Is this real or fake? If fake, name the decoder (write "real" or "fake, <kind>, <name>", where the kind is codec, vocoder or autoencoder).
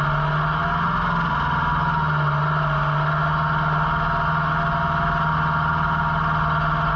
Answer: real